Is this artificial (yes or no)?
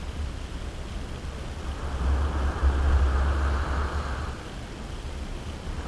no